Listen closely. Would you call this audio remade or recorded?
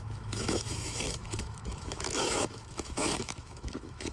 remade